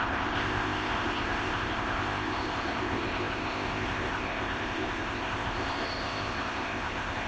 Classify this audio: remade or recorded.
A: remade